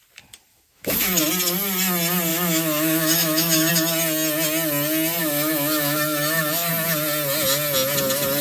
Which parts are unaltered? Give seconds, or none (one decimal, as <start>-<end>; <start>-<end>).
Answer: 0.0-0.5; 1.2-2.3; 3.7-5.2; 6.7-8.4